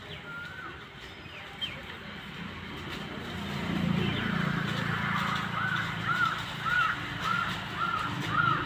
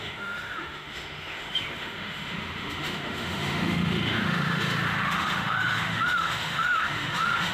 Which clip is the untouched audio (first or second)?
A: first